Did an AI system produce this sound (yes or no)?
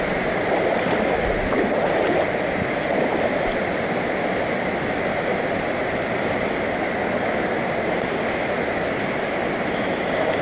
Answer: no